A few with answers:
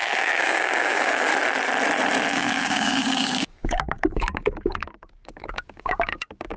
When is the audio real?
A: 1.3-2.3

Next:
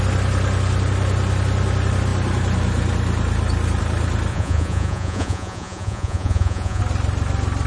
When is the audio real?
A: 0.0-4.3; 6.8-7.7